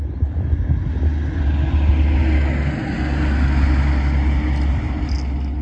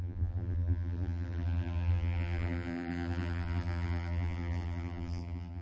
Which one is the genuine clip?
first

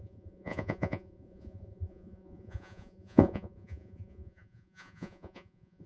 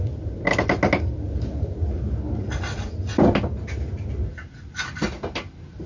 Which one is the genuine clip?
second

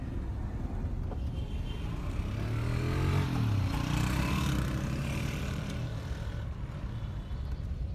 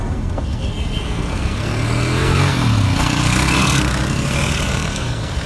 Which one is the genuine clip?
first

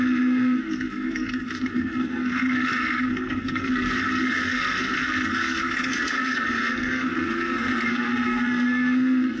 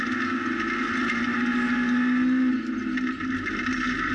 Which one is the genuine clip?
second